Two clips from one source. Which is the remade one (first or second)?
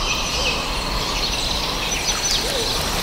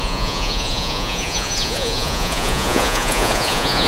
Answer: second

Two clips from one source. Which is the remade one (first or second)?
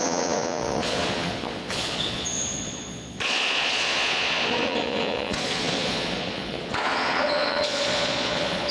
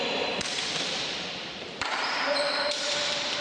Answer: first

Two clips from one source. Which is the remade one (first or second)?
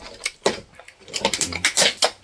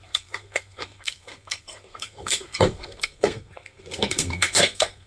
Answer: second